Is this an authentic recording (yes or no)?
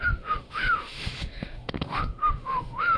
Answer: no